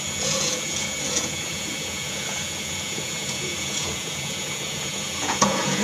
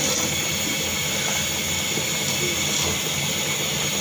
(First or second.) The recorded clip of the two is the second